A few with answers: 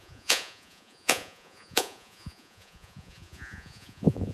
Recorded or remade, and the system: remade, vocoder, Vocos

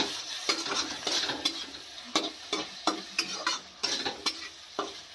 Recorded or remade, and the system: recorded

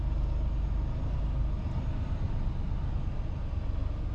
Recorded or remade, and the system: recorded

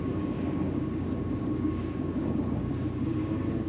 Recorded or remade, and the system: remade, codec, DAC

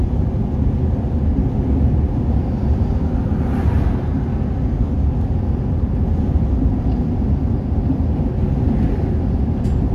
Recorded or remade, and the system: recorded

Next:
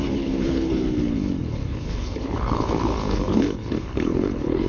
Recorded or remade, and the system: remade, codec, HILCodec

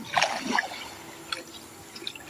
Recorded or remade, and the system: recorded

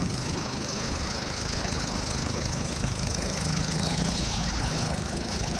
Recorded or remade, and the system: remade, codec, HILCodec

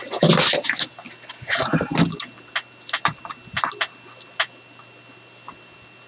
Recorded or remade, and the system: recorded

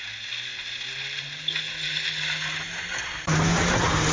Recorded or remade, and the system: recorded